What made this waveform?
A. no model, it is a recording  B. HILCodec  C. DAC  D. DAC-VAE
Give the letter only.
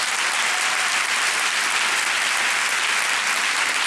A